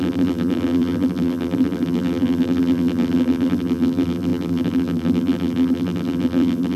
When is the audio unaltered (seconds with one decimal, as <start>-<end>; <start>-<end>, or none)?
none